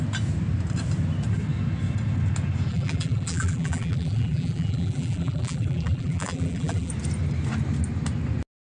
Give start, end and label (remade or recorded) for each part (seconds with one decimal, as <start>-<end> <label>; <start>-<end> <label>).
0.0-2.7 recorded; 2.7-6.9 remade; 6.9-8.6 recorded